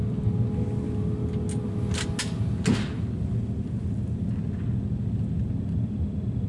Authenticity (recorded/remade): recorded